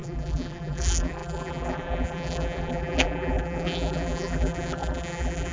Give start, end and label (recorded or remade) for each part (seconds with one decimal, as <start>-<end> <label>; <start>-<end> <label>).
0.0-5.5 remade